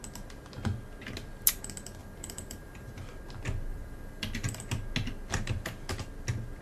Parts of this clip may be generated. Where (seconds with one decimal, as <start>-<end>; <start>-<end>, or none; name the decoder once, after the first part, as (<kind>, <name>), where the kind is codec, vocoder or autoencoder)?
2.0-3.0 (vocoder, BigVGAN v2); 3.7-4.6